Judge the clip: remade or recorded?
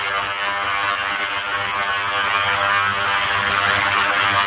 recorded